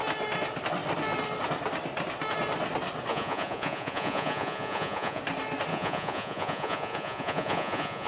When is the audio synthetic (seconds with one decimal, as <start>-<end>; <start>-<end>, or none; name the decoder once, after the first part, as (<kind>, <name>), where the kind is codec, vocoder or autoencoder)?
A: 3.1-5.2 (vocoder, Vocos); 5.7-8.1